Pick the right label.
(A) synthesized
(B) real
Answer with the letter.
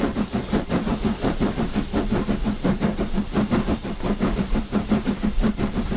A